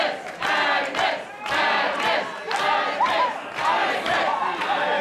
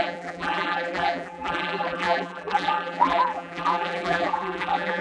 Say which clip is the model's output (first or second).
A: second